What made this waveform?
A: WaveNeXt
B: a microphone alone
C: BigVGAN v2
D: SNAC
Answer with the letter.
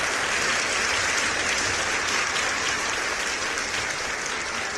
B